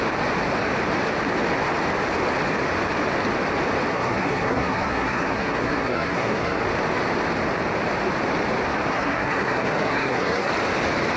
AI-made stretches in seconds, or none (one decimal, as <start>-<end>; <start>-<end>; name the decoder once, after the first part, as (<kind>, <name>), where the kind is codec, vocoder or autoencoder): 3.9-6.6 (codec, SNAC); 8.9-10.5